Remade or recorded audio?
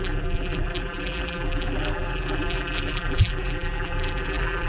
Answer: remade